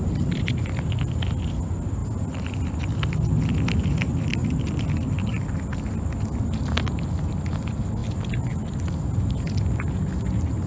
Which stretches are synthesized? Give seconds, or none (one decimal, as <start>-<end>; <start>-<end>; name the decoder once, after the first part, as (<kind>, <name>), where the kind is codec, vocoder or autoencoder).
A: none